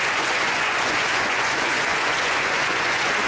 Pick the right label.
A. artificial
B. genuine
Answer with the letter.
A